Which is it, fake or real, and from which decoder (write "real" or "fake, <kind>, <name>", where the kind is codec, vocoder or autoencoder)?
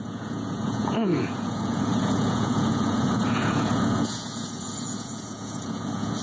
fake, vocoder, Vocos